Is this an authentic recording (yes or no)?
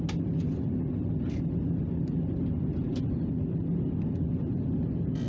yes